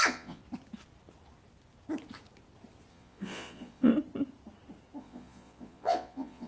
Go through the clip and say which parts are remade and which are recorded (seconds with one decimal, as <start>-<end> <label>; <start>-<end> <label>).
0.0-0.4 remade; 0.4-2.9 recorded; 2.9-3.9 remade; 3.9-5.0 recorded; 5.0-6.5 remade